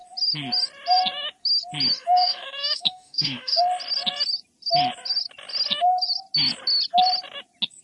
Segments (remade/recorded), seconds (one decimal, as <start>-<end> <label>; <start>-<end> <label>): 0.0-2.0 recorded; 2.0-3.6 remade; 3.6-7.8 recorded